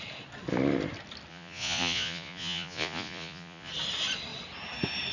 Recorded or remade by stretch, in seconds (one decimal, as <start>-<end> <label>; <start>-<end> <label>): 0.0-1.3 recorded; 1.3-3.7 remade; 3.7-5.1 recorded